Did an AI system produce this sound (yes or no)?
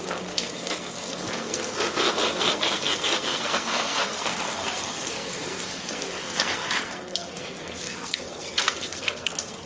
yes